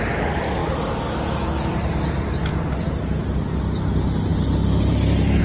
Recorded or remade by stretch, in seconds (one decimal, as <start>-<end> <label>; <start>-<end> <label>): 0.0-5.4 recorded